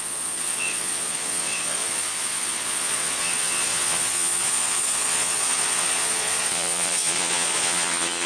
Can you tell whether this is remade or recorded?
remade